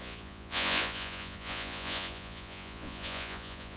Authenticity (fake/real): fake